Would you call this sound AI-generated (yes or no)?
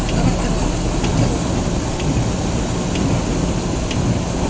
no